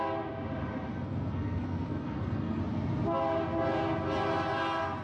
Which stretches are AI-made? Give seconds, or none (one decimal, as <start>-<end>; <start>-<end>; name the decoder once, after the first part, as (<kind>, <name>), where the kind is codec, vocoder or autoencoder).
0.9-2.6 (codec, SNAC)